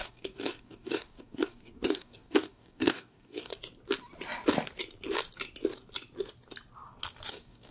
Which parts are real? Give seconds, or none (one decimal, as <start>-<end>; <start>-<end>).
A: 3.5-7.3